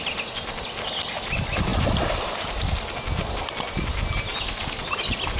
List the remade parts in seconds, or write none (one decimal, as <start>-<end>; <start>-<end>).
none